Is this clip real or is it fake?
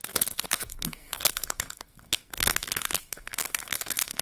fake